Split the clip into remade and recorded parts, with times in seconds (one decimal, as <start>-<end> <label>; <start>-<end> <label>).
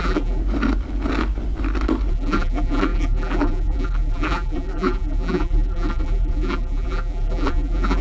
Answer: 0.0-0.4 remade; 0.4-2.1 recorded; 2.1-8.0 remade